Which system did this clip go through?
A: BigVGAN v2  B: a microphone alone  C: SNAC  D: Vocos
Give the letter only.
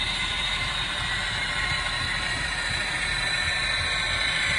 A